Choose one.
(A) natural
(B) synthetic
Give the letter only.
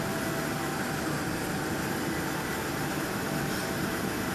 A